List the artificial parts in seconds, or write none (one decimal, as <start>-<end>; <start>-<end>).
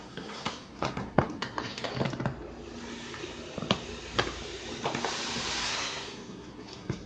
0.0-1.9; 5.6-7.1